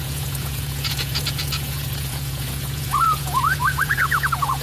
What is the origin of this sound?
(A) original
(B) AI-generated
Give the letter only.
B